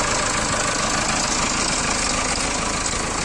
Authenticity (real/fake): real